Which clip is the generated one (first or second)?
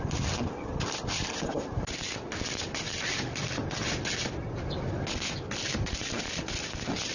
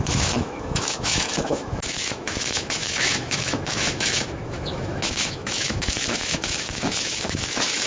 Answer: second